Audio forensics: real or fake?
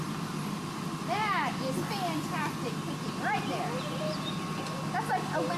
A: real